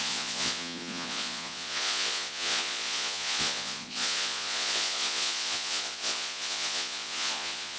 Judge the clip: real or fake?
fake